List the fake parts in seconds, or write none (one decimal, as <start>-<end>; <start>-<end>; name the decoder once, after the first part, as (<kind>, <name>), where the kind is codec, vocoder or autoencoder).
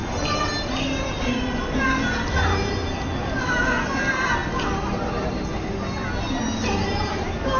1.1-2.8 (vocoder, BigVGAN v2); 3.4-6.0; 6.8-7.6